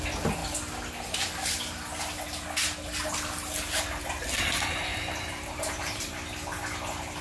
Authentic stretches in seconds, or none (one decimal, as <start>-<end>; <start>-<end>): 0.0-4.9; 6.1-7.2